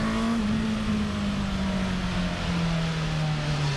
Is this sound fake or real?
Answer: real